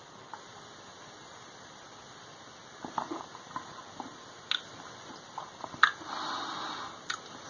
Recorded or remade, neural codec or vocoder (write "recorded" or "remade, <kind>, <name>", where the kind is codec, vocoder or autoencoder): recorded